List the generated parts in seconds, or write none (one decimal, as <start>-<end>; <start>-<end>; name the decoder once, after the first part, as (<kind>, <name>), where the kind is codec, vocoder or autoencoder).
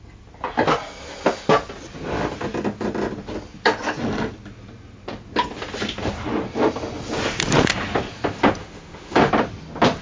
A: 8.6-9.3 (autoencoder, DAC-VAE)